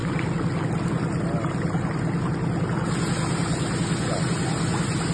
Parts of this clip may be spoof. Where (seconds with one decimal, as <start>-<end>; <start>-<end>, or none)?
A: none